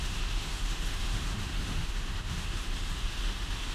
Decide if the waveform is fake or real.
fake